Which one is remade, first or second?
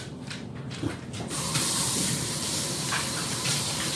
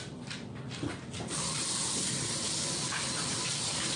first